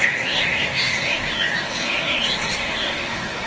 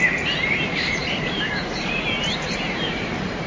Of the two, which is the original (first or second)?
second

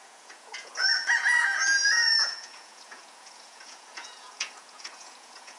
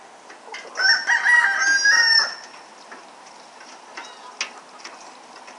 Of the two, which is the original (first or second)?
second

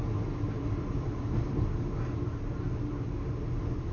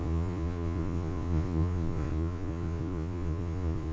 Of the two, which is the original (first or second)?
first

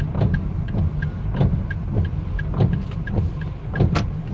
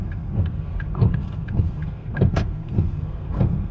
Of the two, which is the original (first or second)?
first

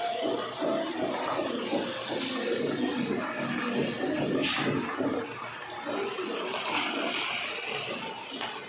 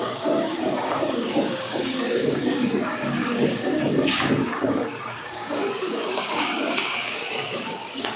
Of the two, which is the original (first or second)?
first